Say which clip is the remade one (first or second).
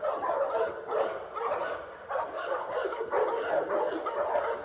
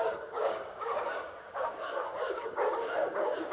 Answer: second